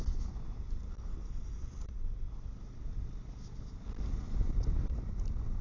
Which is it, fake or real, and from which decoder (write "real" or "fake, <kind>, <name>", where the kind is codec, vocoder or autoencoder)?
real